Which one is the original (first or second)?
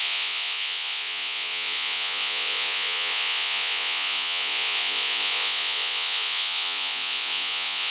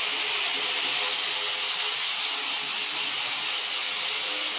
second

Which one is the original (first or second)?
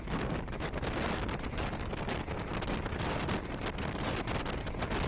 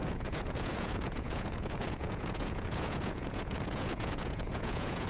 first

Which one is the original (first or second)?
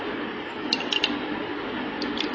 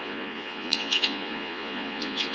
first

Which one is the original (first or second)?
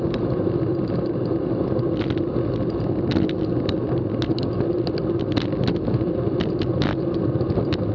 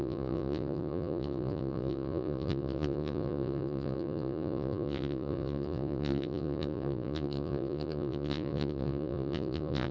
first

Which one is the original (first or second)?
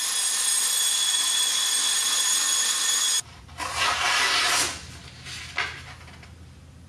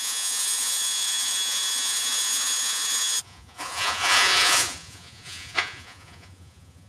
first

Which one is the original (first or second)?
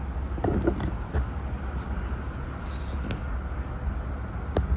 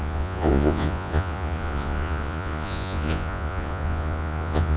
first